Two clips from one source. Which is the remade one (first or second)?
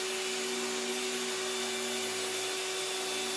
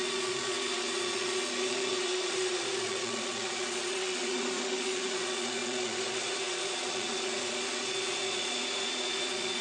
second